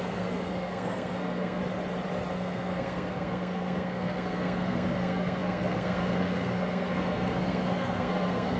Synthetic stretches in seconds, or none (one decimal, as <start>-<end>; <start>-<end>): 0.0-1.6; 2.3-8.6